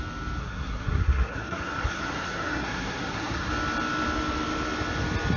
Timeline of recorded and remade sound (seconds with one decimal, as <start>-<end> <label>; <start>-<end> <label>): 0.0-0.4 recorded; 0.4-3.5 remade; 3.5-5.4 recorded